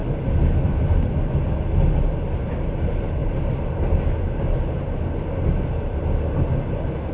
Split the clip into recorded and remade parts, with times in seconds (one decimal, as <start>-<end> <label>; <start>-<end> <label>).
0.0-7.1 recorded